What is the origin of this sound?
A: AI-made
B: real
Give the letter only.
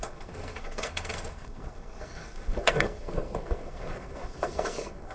A